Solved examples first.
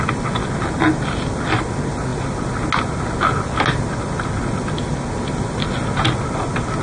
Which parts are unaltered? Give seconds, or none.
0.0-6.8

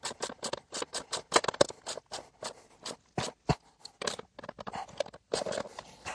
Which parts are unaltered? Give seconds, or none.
0.0-6.1

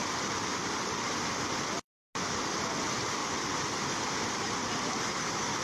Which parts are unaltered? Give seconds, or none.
0.0-5.6

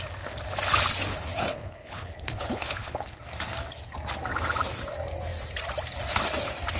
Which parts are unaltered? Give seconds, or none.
0.0-1.1; 3.2-6.8